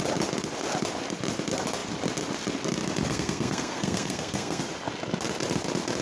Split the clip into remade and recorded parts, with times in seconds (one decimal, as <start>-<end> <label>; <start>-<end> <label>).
0.0-3.1 recorded; 3.1-4.6 remade; 4.6-6.0 recorded

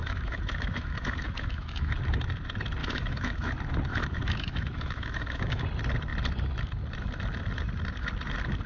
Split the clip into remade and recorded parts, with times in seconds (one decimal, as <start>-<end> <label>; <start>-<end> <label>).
0.0-1.9 remade; 1.9-2.8 recorded; 2.8-3.5 remade; 3.5-3.9 recorded; 3.9-5.6 remade; 5.6-8.7 recorded

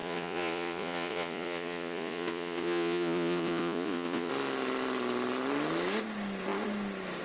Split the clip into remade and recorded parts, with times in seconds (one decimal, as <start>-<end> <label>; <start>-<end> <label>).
0.0-4.3 remade; 4.3-7.2 recorded